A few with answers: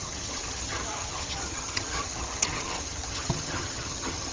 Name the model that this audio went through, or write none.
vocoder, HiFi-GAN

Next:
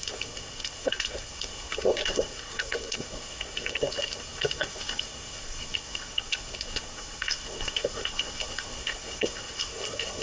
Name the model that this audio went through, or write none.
codec, SNAC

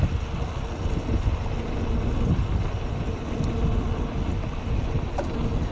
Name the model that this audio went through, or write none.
none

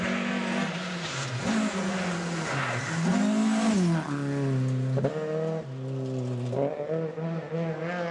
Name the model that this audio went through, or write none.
none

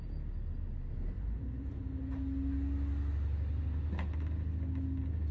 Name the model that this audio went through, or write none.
none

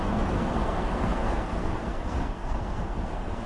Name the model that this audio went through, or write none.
codec, SNAC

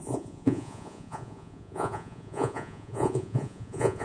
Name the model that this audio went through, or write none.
vocoder, Vocos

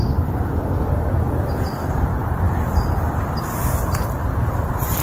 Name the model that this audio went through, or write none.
vocoder, BigVGAN v2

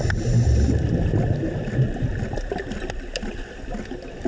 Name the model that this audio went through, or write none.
none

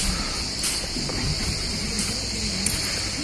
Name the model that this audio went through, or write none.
none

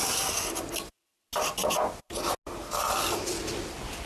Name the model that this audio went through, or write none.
none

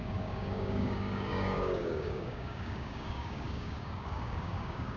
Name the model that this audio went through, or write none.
codec, DAC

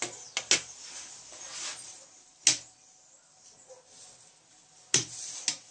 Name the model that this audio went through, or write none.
none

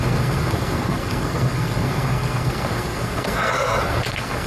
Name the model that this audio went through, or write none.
codec, SNAC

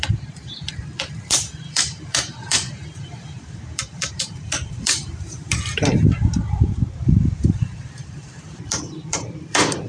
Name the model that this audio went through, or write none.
vocoder, BigVGAN v2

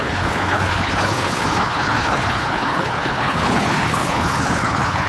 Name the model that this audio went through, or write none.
codec, HILCodec